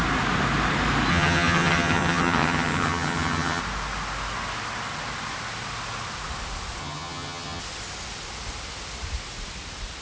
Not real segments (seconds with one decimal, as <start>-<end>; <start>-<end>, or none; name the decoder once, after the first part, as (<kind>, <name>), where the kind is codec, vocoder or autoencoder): 1.1-3.6 (vocoder, HiFi-GAN); 6.8-7.6